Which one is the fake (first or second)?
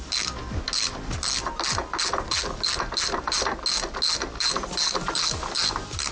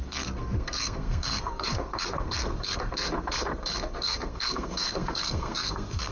second